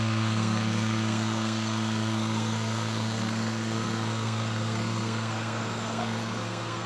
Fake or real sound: fake